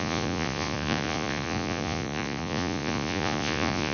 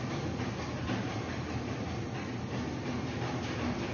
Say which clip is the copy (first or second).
first